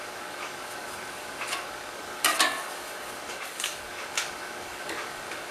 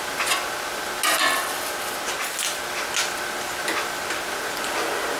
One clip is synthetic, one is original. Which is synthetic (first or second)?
first